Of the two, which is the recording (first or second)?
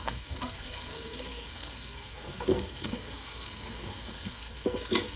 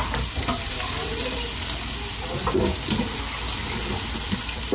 second